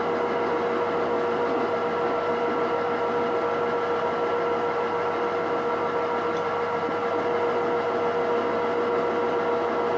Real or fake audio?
real